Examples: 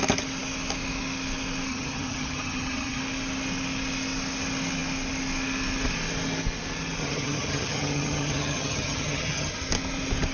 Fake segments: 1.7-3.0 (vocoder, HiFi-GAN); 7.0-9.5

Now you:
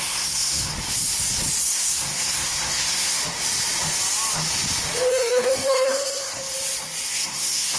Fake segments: 0.0-0.7 (codec, SNAC); 1.6-3.2; 5.1-6.4; 7.1-7.8

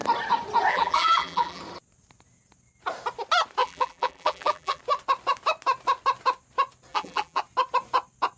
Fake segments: 0.7-1.6 (vocoder, BigVGAN v2); 3.6-4.8; 6.9-7.4

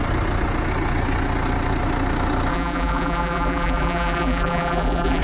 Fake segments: 2.5-5.2 (vocoder, BigVGAN v2)

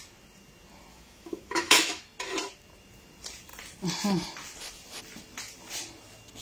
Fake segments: 0.9-2.0 (autoencoder, DAC-VAE)

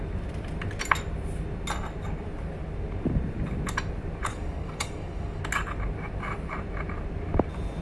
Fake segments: 4.3-5.4 (codec, DAC)

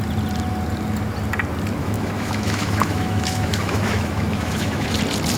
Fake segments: 1.8-5.0 (autoencoder, DAC-VAE)

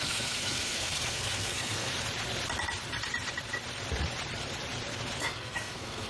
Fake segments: 0.0-1.9 (codec, SNAC); 5.2-6.1